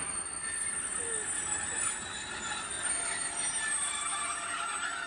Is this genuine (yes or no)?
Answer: yes